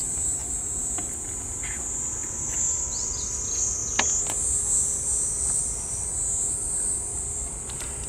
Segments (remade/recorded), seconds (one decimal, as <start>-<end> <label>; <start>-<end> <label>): 0.0-8.1 recorded